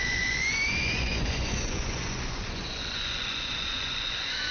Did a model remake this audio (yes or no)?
yes